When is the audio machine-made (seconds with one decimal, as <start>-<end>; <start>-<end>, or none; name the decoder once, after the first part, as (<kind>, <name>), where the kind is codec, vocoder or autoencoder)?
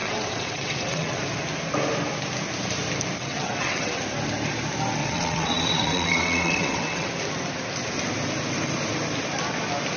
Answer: 0.0-1.2 (vocoder, WaveNeXt); 3.2-4.0; 5.0-7.1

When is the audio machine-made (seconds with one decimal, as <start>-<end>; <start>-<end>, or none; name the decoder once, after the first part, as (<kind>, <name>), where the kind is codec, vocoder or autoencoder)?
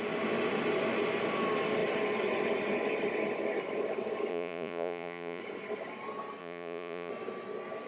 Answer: 4.3-5.4 (vocoder, Vocos); 6.4-7.1